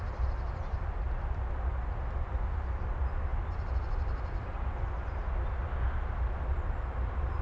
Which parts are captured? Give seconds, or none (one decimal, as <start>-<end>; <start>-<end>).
0.0-7.4